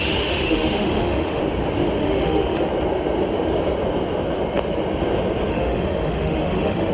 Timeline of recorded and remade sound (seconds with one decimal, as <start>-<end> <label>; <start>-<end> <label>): 0.0-1.4 remade; 1.4-2.0 recorded; 2.0-2.7 remade; 2.7-5.5 recorded; 5.5-6.9 remade